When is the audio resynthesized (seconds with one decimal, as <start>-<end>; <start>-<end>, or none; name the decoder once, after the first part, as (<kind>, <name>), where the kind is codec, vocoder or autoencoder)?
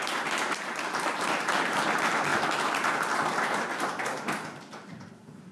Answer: none